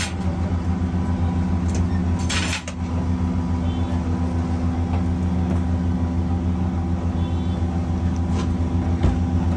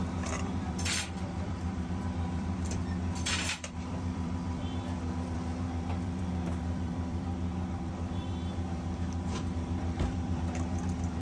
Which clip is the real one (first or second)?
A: first